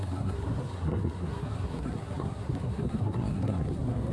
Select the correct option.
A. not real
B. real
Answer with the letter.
A